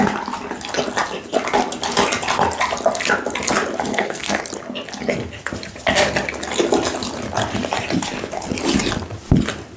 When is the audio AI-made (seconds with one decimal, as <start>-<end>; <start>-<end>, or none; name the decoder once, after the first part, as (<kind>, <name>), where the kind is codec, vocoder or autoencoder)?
3.9-4.4 (codec, SNAC)